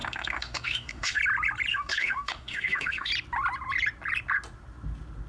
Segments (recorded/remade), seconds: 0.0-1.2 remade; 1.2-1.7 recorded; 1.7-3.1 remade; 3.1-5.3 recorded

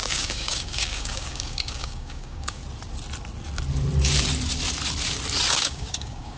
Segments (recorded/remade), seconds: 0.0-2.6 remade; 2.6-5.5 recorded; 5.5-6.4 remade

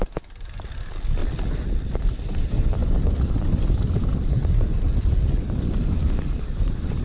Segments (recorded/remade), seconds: 0.0-1.2 remade; 1.2-1.8 recorded; 1.8-2.8 remade; 2.8-5.4 recorded; 5.4-7.0 remade

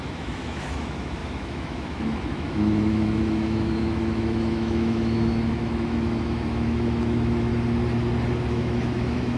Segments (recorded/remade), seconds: 0.0-7.5 remade; 7.5-8.5 recorded; 8.5-9.4 remade

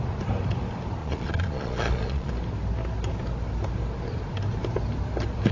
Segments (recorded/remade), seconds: 0.0-1.0 recorded; 1.0-2.3 remade; 2.3-5.5 recorded